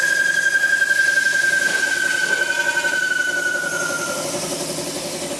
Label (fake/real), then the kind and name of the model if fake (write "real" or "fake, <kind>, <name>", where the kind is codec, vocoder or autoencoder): real